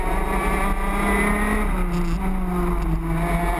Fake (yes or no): no